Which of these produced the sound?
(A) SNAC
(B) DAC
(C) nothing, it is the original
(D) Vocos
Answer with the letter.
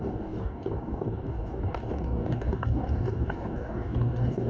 B